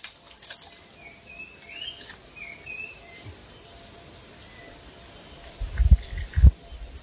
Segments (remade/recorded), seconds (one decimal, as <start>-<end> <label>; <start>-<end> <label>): 0.0-7.0 recorded